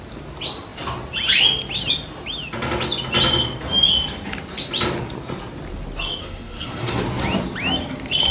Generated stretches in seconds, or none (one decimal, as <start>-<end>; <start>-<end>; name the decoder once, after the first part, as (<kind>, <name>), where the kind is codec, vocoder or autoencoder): 6.2-7.0 (codec, SNAC)